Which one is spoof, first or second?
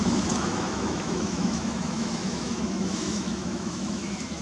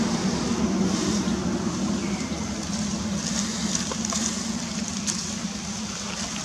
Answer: first